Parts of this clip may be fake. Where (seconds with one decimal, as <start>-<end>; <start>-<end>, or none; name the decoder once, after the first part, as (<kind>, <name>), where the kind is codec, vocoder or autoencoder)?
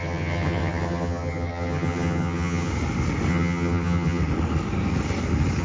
0.0-2.7 (vocoder, HiFi-GAN); 3.3-4.2